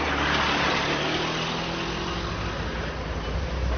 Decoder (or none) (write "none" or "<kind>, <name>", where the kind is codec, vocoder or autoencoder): none